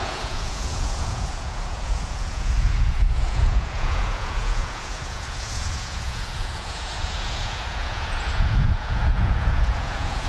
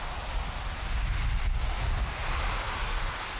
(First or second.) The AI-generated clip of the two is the first